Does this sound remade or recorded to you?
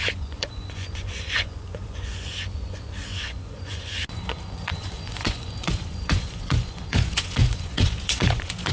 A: remade